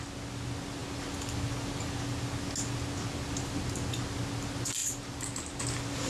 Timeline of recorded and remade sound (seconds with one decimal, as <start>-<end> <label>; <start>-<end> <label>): 0.0-6.1 recorded